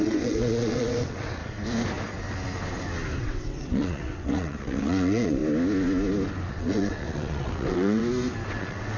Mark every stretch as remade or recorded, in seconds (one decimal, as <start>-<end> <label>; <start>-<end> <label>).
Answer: 0.0-1.4 remade; 1.4-3.2 recorded; 3.2-5.4 remade; 5.4-6.5 recorded; 6.5-8.0 remade; 8.0-8.5 recorded; 8.5-9.0 remade